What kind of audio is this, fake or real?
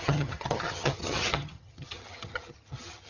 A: fake